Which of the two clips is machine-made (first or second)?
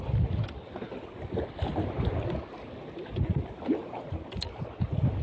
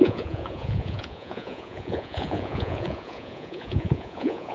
second